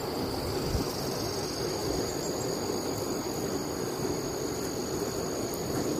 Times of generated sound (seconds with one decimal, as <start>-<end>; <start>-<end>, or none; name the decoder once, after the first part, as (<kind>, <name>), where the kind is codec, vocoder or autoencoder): none